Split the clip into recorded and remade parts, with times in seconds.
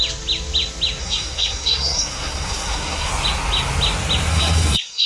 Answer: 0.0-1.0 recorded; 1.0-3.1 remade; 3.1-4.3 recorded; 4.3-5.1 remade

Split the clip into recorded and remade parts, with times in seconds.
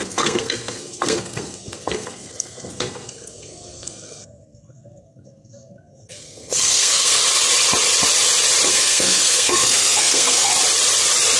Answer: 0.0-7.2 remade; 7.2-8.7 recorded; 8.7-10.5 remade; 10.5-11.4 recorded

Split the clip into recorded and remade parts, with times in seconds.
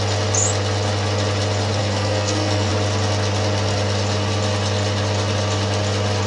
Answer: 0.0-1.8 recorded; 1.8-2.7 remade; 2.7-6.3 recorded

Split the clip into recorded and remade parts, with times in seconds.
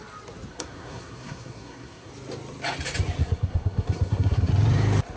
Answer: 0.0-0.5 recorded; 0.5-2.1 remade; 2.1-3.2 recorded; 3.2-4.5 remade; 4.5-5.2 recorded